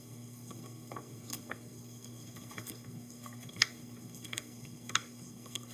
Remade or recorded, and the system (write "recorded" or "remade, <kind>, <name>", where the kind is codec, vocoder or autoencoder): remade, codec, SNAC